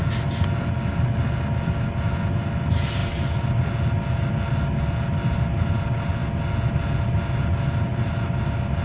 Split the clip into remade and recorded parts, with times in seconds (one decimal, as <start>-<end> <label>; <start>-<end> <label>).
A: 0.0-8.8 recorded